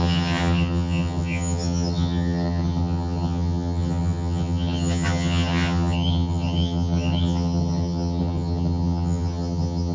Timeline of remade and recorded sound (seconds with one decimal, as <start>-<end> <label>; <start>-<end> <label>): 0.0-9.9 remade